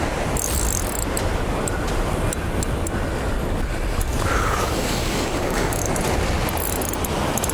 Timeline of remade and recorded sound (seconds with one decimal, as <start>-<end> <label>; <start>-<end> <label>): 0.0-4.3 recorded; 4.3-5.8 remade; 5.8-7.5 recorded